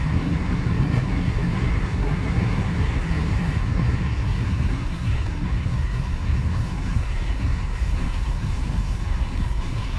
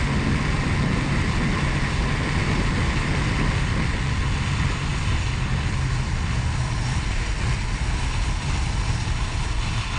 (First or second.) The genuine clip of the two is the second